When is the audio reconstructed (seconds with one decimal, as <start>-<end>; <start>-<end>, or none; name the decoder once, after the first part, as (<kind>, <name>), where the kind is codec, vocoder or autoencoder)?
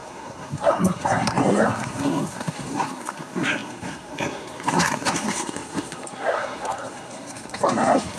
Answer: 0.0-8.2 (codec, SNAC)